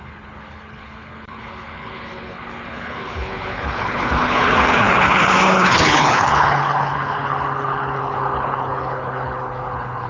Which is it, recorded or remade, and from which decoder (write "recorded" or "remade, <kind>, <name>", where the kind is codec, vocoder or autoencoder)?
remade, codec, HILCodec